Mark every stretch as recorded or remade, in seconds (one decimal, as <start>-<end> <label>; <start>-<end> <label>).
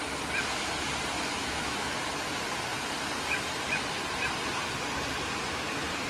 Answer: 0.0-1.4 recorded; 1.4-2.0 remade; 2.0-6.1 recorded